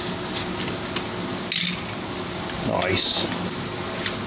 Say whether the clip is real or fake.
real